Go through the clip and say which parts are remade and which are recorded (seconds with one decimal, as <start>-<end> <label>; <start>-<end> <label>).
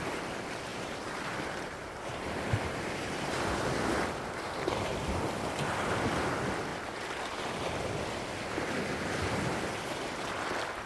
0.0-0.7 recorded; 0.7-5.6 remade; 5.6-10.9 recorded